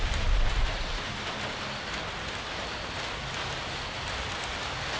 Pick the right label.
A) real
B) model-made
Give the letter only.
A